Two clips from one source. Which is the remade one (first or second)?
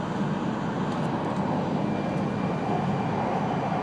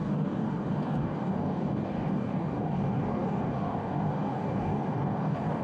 second